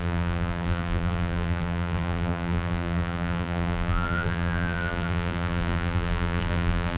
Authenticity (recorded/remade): remade